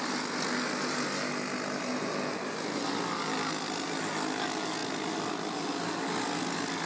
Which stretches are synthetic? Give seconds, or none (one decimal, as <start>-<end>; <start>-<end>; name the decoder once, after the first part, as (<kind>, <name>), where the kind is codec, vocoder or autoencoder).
none